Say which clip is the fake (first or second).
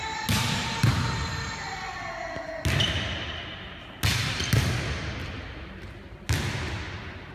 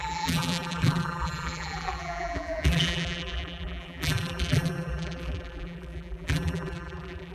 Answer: second